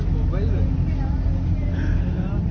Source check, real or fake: real